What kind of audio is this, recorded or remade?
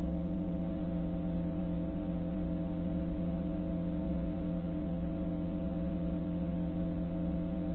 remade